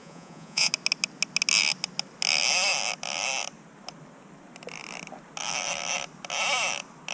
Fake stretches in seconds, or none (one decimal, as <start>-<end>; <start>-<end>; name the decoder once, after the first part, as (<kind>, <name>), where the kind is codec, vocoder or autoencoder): 0.0-0.7 (vocoder, Vocos)